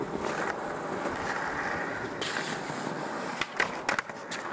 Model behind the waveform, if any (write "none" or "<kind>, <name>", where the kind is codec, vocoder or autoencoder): none